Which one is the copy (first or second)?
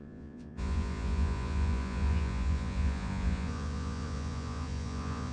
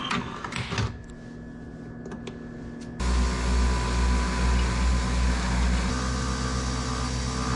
first